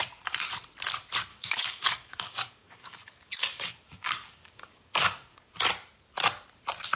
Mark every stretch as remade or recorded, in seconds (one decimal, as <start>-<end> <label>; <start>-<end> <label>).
0.0-1.3 recorded; 1.3-5.5 remade; 5.5-7.0 recorded